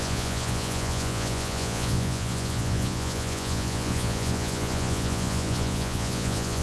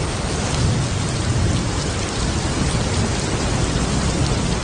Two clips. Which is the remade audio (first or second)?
first